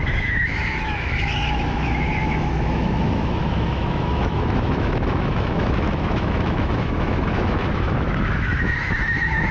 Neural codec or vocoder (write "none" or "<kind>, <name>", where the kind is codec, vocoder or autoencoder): autoencoder, DAC-VAE